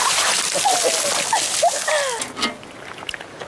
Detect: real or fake real